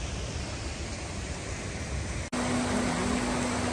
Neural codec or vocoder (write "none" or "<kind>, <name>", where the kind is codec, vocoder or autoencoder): none